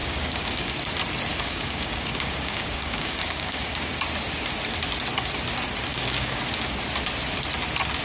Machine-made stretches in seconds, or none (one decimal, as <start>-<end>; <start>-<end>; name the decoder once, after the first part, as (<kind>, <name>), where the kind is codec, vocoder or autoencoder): 0.0-0.7 (codec, DAC); 1.3-3.9; 5.9-6.4

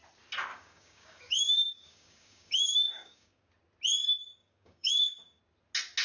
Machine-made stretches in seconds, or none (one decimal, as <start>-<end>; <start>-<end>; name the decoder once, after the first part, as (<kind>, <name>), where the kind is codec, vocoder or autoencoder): 0.5-3.5 (codec, DAC); 4.2-5.4

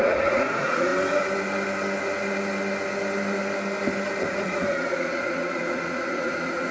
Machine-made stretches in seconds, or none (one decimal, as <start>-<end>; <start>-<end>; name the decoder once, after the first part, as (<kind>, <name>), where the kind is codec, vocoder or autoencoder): 0.0-0.9 (vocoder, Vocos); 4.2-6.7

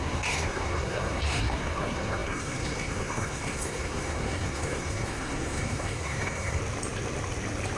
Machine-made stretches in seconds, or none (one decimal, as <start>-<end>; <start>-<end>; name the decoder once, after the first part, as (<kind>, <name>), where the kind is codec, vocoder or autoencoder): 0.0-6.6 (codec, SNAC)

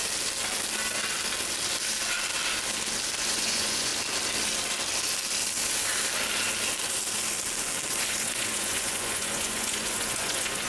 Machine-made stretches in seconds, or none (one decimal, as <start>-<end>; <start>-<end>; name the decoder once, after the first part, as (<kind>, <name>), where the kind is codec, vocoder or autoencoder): 3.2-3.9 (vocoder, Vocos); 7.9-10.7

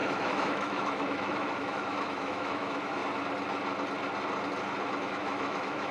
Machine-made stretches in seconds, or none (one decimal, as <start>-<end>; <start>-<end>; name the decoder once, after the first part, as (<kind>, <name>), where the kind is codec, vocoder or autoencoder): 0.0-3.0 (autoencoder, DAC-VAE); 5.0-5.9

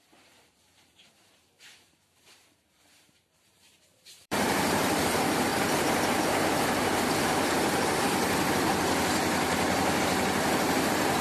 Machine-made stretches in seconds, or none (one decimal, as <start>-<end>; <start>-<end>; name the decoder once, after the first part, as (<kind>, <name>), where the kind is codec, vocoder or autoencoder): 0.0-5.5 (vocoder, BigVGAN v2); 10.0-11.2

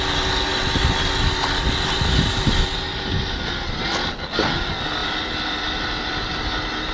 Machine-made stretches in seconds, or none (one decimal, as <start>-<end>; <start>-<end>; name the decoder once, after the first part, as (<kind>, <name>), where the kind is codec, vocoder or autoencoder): 0.5-3.8 (vocoder, BigVGAN v2); 5.0-6.4